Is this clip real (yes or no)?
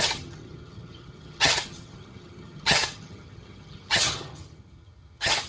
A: no